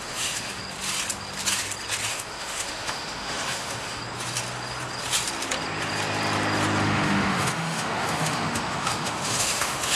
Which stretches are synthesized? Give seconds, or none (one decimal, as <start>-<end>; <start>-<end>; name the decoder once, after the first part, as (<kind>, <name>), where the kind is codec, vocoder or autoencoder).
0.0-0.6 (autoencoder, DAC-VAE); 2.1-4.0; 6.8-10.0